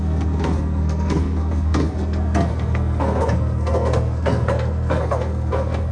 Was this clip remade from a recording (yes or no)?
yes